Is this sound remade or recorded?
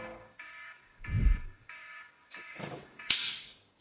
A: remade